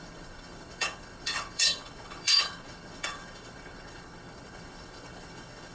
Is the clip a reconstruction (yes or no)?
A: yes